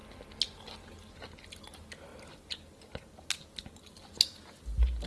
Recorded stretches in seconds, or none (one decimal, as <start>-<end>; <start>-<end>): 0.0-5.1

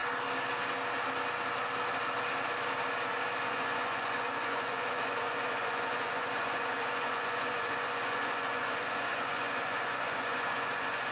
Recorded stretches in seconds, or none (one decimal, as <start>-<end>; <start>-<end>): 0.0-3.4